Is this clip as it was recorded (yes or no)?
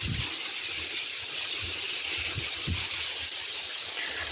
yes